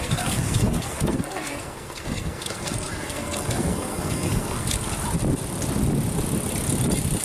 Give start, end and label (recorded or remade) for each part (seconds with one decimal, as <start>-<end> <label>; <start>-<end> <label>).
0.0-4.9 remade; 4.9-7.2 recorded